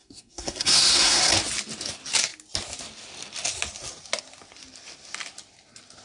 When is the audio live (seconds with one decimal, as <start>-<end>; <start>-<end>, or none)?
1.2-6.0